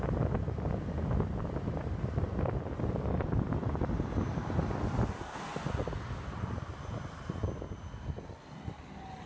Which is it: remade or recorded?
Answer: recorded